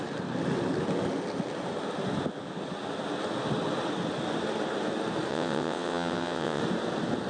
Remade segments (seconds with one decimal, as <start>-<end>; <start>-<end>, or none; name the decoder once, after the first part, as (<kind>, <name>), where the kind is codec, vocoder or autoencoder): 5.3-6.6 (vocoder, WaveNeXt)